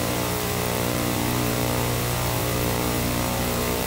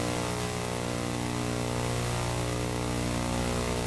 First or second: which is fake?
first